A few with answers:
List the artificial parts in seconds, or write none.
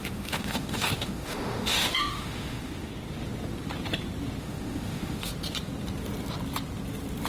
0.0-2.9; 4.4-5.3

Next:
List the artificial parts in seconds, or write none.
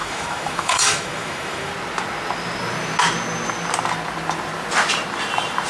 0.0-1.7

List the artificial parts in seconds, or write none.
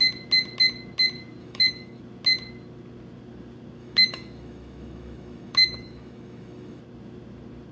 1.4-2.0; 3.8-6.8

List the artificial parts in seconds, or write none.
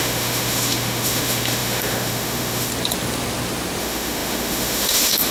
0.0-2.7; 3.8-5.3